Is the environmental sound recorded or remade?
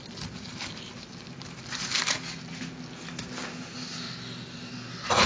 recorded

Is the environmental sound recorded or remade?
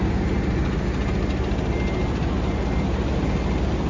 recorded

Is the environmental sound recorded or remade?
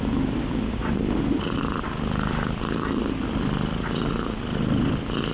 recorded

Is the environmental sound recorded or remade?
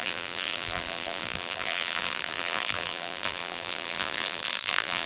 remade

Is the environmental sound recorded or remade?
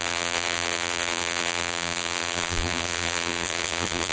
remade